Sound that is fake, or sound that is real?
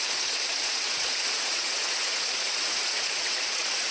fake